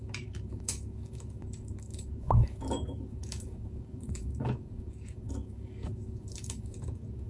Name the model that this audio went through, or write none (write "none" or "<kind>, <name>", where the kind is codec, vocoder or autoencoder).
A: codec, DAC